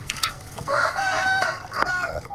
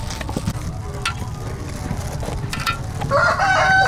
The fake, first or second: first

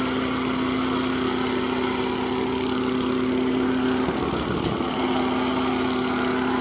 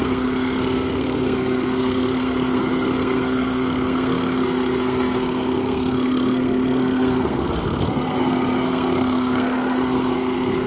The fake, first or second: second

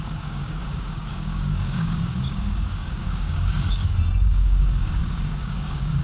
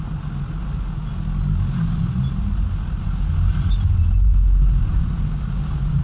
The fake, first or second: first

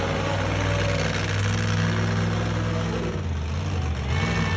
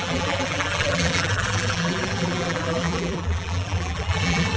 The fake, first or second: second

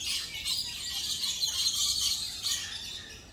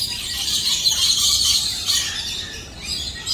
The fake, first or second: second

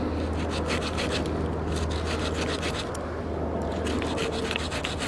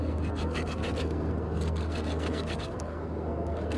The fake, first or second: second